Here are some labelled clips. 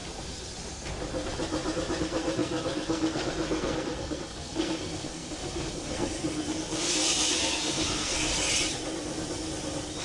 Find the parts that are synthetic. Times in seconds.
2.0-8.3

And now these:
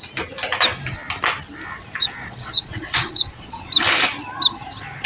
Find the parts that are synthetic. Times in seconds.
2.0-3.7

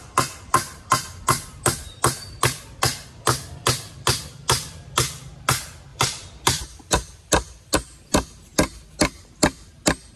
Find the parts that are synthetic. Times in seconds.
5.9-6.9